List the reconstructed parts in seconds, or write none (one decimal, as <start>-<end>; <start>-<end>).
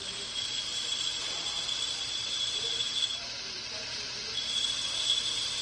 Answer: none